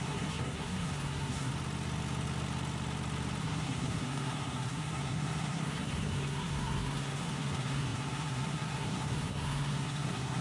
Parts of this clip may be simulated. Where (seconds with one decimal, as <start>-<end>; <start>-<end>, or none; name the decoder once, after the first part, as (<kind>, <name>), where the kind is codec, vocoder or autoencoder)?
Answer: 0.0-1.5 (codec, SNAC); 3.4-10.4

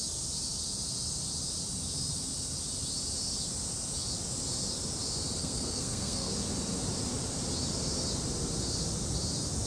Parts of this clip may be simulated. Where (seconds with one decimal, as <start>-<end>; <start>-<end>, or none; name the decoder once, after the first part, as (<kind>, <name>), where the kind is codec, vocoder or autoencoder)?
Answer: 5.4-6.3 (codec, SNAC)